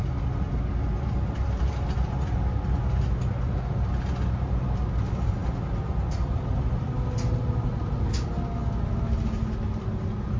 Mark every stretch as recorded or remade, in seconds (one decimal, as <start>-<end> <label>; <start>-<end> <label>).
0.0-10.4 recorded